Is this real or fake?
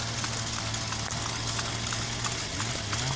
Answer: real